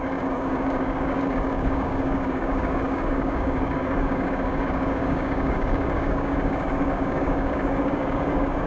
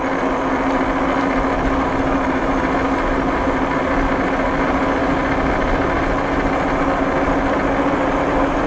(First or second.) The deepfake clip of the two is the first